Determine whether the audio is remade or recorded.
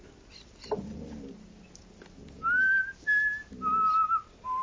recorded